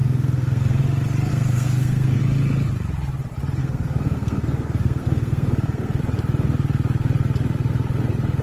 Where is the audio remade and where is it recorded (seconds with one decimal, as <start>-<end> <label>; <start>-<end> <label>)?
0.0-0.8 remade; 0.8-1.3 recorded; 1.3-2.2 remade; 2.2-3.6 recorded; 3.6-6.0 remade; 6.0-8.4 recorded